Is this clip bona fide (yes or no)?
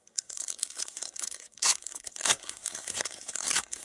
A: no